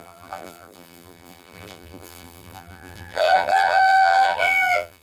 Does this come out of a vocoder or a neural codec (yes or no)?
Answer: yes